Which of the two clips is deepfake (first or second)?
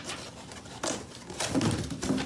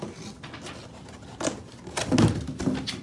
first